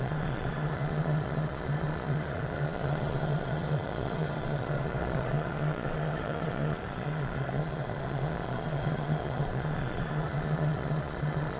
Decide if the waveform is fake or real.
fake